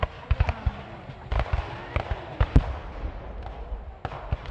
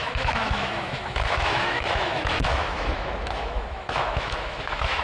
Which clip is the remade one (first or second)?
second